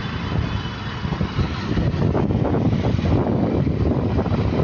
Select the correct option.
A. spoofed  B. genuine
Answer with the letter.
B